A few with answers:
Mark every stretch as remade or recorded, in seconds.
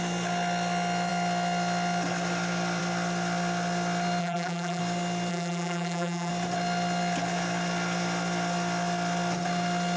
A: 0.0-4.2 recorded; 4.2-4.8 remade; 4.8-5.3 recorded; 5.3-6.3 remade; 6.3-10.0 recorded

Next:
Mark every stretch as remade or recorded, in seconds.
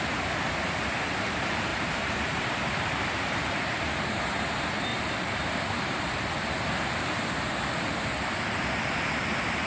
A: 0.0-1.7 recorded; 1.7-3.7 remade; 3.7-4.9 recorded; 4.9-6.3 remade; 6.3-9.7 recorded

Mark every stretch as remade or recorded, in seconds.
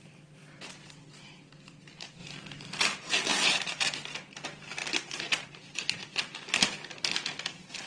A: 0.0-2.2 recorded; 2.2-2.8 remade; 2.8-4.8 recorded; 4.8-5.7 remade; 5.7-7.9 recorded